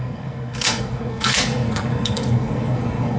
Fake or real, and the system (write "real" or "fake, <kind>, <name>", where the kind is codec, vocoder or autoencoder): fake, codec, SNAC